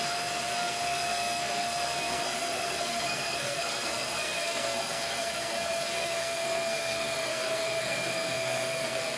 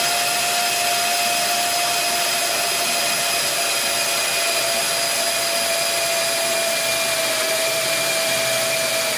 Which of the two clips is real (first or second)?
second